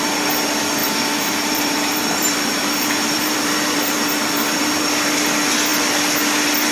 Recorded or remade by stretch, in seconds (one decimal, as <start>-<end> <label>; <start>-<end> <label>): 0.0-0.8 recorded; 0.8-4.8 remade; 4.8-6.7 recorded